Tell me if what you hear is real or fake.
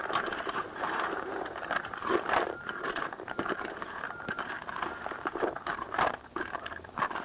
fake